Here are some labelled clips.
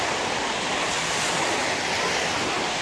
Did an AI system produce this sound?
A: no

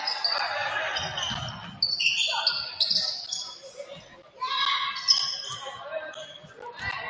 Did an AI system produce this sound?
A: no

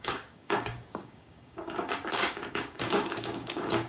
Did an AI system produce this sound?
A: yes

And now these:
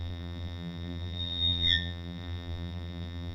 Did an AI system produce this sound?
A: yes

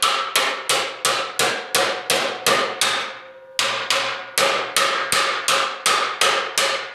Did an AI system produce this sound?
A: no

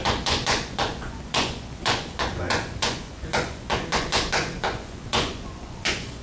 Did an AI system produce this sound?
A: yes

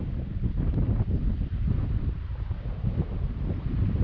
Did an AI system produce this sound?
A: no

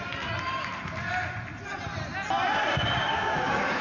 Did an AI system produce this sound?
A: no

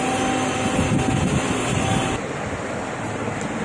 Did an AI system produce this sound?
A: no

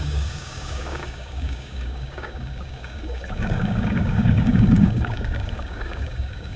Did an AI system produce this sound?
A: yes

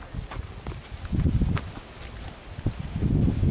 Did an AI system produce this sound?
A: no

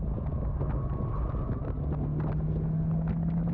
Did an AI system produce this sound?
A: no